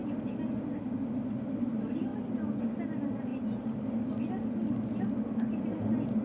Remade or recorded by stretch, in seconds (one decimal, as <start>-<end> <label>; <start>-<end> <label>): 0.0-6.2 recorded